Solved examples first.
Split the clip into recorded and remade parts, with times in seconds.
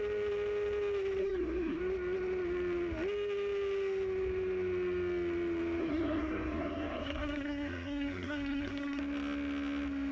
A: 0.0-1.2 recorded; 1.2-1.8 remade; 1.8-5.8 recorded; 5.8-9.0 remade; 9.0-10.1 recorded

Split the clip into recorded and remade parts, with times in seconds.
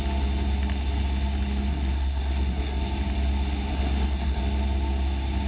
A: 0.0-1.7 recorded; 1.7-2.8 remade; 2.8-3.7 recorded; 3.7-4.4 remade; 4.4-5.5 recorded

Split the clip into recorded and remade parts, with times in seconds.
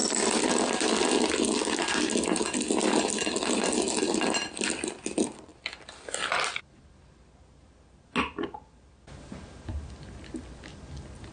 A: 0.0-11.3 recorded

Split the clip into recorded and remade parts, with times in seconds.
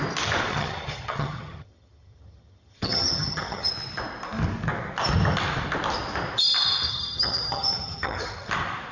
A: 0.0-0.5 recorded; 0.5-3.7 remade; 3.7-6.9 recorded; 6.9-8.5 remade; 8.5-8.9 recorded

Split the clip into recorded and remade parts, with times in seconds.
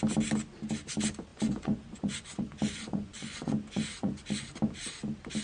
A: 0.0-1.3 recorded; 1.3-4.5 remade; 4.5-5.4 recorded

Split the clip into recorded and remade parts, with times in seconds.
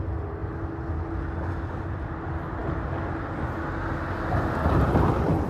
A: 0.0-5.5 recorded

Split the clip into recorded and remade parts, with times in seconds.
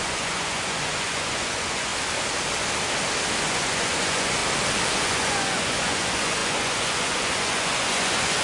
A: 0.0-1.9 remade; 1.9-3.4 recorded; 3.4-4.4 remade; 4.4-4.9 recorded; 4.9-8.4 remade